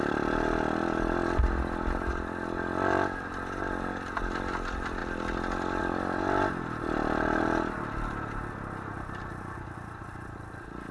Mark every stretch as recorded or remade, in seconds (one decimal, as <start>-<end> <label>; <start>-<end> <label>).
0.0-10.9 recorded